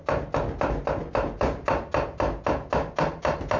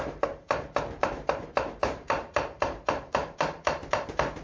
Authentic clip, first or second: first